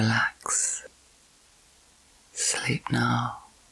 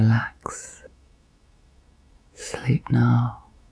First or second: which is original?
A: first